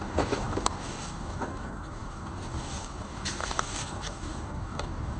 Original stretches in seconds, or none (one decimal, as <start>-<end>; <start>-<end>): none